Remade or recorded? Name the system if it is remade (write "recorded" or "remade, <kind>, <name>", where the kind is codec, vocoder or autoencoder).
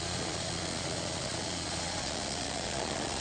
remade, vocoder, Vocos